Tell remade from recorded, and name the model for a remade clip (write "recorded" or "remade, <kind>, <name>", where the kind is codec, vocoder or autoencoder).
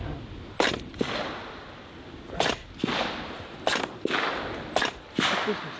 recorded